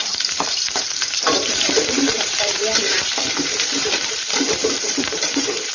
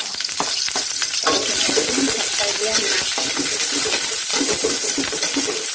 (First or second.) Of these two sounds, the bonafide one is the second